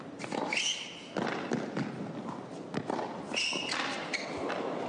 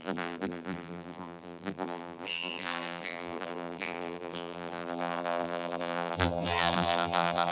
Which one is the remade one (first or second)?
second